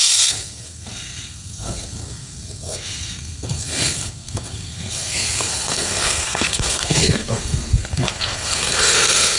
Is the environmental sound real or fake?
fake